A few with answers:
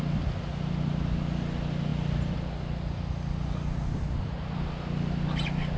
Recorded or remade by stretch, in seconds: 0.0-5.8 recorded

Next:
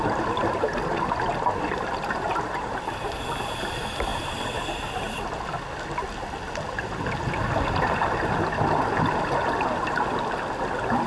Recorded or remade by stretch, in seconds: 0.0-0.4 recorded; 0.4-3.2 remade; 3.2-11.1 recorded

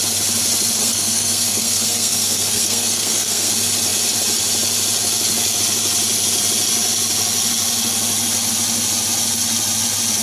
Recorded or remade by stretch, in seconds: 0.0-0.8 recorded; 0.8-3.5 remade; 3.5-10.2 recorded

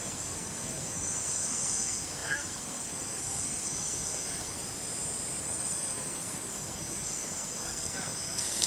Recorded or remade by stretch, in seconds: 0.0-4.6 remade; 4.6-5.4 recorded; 5.4-8.7 remade